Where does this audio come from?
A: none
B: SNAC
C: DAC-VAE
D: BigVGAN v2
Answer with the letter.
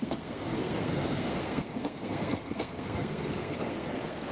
B